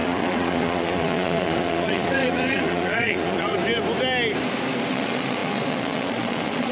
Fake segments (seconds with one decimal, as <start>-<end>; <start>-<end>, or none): 0.0-3.6; 4.9-6.7